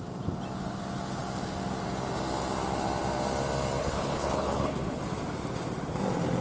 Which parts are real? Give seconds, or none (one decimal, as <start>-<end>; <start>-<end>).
0.0-3.8; 5.0-6.4

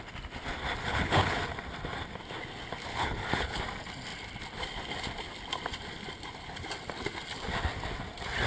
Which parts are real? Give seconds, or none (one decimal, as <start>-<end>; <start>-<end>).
0.0-0.8; 1.4-2.9; 3.6-8.5

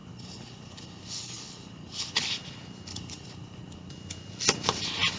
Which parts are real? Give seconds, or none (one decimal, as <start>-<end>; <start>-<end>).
2.3-2.9; 3.9-5.2

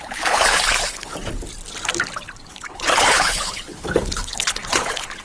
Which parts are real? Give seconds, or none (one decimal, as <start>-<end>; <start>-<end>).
1.1-2.5

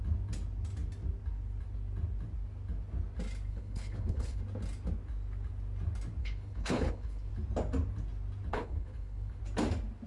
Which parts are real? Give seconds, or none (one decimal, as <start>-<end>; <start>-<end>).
0.0-3.5; 4.4-6.2; 7.3-8.5; 9.4-10.1